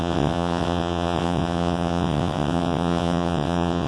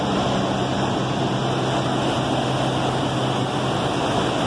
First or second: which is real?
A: second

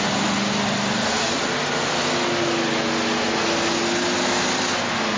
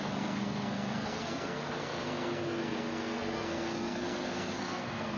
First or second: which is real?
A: first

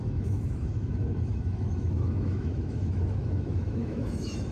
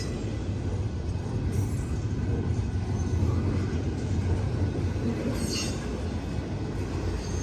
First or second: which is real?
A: second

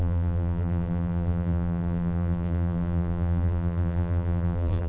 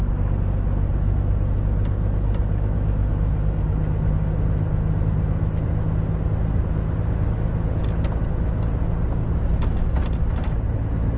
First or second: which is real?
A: second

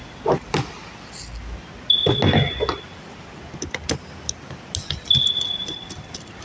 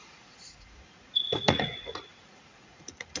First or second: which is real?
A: first